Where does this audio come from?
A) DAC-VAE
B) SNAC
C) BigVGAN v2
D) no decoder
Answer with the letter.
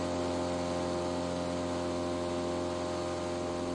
D